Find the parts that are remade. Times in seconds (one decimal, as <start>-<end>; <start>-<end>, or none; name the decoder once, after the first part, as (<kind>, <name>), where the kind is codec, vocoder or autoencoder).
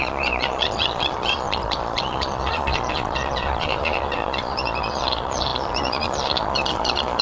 0.0-7.2 (vocoder, Vocos)